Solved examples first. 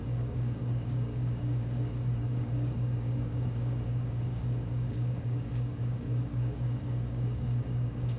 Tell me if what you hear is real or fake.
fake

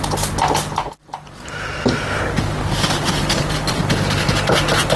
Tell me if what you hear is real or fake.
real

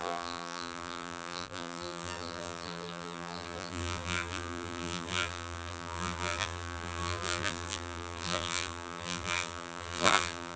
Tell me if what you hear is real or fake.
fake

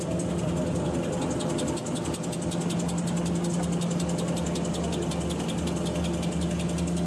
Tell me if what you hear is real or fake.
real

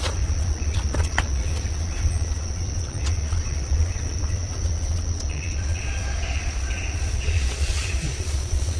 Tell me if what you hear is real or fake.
fake